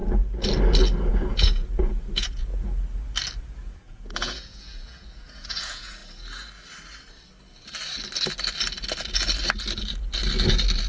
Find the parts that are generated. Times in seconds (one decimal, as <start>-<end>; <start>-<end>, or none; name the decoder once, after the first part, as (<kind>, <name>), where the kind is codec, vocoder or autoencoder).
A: 1.1-2.5 (vocoder, Vocos); 3.4-6.0